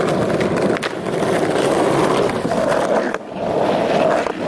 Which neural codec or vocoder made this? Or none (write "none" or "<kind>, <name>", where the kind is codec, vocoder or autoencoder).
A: none